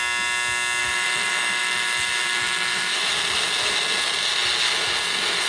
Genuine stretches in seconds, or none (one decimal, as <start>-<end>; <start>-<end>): 0.0-0.8; 3.1-5.5